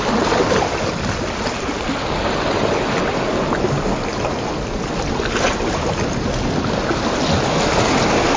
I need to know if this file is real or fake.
real